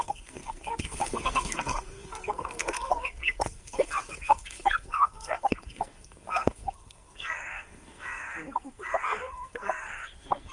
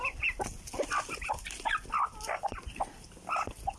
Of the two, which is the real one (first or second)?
second